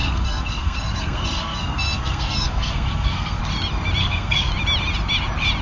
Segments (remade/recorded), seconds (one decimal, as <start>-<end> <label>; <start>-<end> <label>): 0.0-3.4 remade; 3.4-4.0 recorded; 4.0-4.5 remade; 4.5-5.6 recorded